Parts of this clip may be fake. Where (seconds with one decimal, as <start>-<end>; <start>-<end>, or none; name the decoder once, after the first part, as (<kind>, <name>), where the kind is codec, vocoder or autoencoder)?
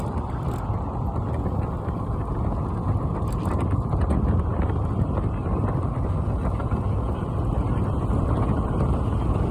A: 4.5-9.5 (vocoder, BigVGAN v2)